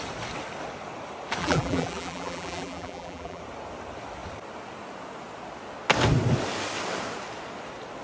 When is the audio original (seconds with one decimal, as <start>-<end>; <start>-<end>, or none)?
0.0-1.4; 3.4-8.0

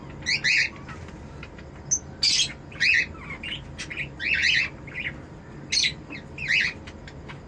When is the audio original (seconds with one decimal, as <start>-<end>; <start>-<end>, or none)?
0.0-7.5

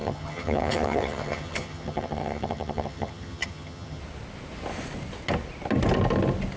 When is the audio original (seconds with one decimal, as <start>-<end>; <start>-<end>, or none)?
4.0-6.6

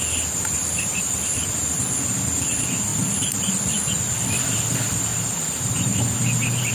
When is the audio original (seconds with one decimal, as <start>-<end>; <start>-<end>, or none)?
0.0-0.6; 1.3-2.9; 3.9-5.1

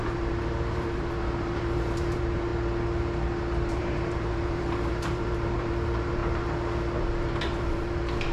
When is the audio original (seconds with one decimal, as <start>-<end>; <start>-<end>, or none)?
2.5-3.7; 6.2-7.0

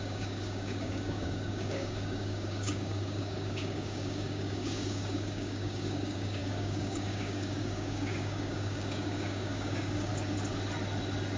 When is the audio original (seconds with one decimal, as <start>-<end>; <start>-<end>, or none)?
10.1-11.4

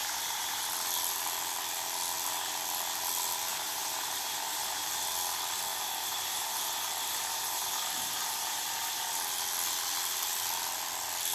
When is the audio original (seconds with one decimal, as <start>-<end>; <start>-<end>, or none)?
0.6-3.5; 4.9-5.7; 9.1-11.3

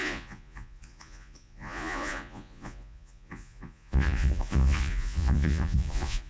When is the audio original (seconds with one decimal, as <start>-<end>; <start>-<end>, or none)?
none